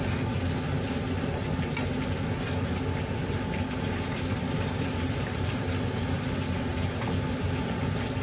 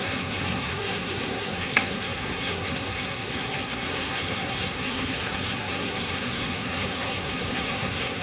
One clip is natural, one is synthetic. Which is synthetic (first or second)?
second